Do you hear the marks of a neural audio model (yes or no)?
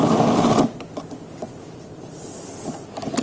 no